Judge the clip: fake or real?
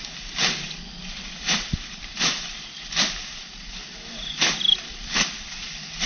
real